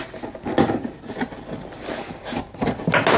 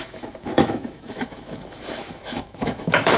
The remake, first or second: second